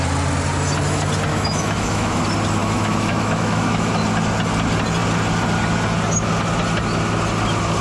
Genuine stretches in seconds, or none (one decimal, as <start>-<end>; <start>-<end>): 0.0-1.3; 2.2-2.6; 3.9-7.8